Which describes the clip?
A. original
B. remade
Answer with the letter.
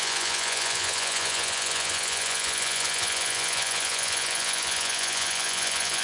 B